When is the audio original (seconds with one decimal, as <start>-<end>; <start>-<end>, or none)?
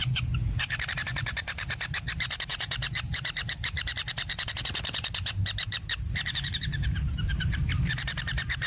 none